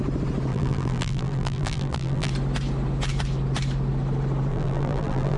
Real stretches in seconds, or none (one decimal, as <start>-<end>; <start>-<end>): 0.0-0.5; 2.3-4.5